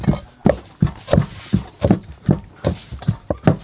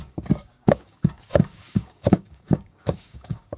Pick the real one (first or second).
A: first